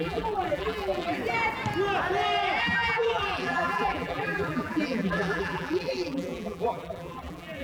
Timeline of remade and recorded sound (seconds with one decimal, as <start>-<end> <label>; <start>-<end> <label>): 0.0-1.2 remade; 1.2-2.6 recorded; 2.6-7.6 remade

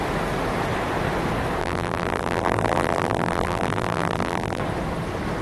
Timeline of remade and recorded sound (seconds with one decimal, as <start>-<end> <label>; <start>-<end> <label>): 0.0-1.6 recorded; 1.6-4.6 remade; 4.6-5.4 recorded

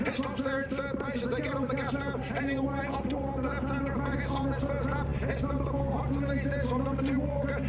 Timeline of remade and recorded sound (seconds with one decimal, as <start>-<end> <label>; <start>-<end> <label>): 0.0-0.6 recorded; 0.6-2.8 remade; 2.8-7.7 recorded

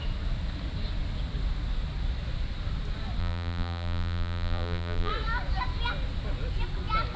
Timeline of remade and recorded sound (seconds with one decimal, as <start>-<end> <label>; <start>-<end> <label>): 0.0-3.2 recorded; 3.2-5.1 remade; 5.1-7.2 recorded

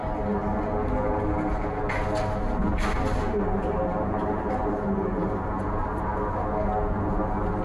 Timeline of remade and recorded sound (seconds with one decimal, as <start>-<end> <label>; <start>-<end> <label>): 0.0-2.7 recorded; 2.7-6.4 remade; 6.4-7.6 recorded